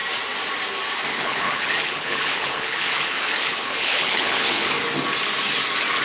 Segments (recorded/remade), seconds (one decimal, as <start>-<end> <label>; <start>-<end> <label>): 0.0-1.1 recorded; 1.1-4.7 remade; 4.7-6.0 recorded